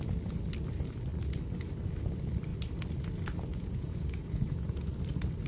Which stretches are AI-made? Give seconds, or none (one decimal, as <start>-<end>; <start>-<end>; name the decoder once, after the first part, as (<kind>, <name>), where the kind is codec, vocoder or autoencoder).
3.5-4.9 (vocoder, Vocos)